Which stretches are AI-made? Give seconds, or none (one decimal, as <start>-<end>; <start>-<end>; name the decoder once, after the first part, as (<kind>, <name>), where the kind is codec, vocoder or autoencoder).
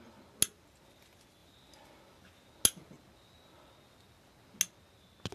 none